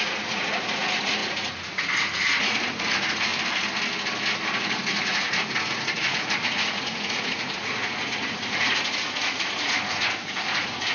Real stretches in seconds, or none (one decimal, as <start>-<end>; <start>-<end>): 3.3-4.5